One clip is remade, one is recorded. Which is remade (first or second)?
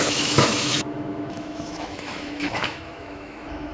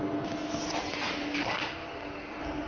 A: first